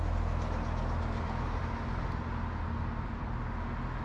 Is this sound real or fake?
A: real